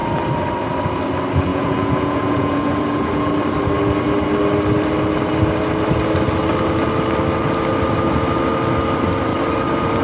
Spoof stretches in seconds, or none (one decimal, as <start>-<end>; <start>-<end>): 1.5-3.3